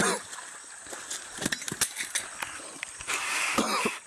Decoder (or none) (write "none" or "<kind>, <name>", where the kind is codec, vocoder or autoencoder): none